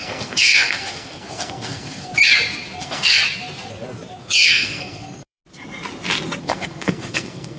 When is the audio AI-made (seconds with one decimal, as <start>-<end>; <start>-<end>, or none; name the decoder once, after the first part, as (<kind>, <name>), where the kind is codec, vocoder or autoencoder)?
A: 0.0-2.1 (codec, SNAC); 2.8-3.2; 4.2-5.4; 6.4-7.6